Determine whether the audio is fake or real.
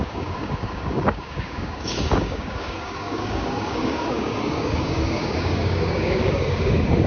fake